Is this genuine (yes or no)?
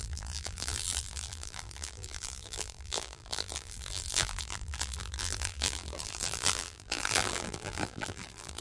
no